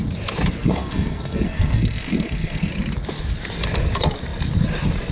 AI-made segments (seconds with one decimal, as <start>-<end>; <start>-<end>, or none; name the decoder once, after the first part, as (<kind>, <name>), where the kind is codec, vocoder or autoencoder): 0.6-2.7 (codec, SNAC)